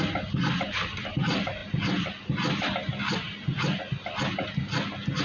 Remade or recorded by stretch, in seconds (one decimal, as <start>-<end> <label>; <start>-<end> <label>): 0.0-5.2 recorded